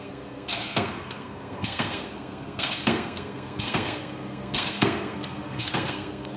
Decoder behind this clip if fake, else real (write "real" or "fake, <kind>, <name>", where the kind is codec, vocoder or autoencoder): fake, codec, SNAC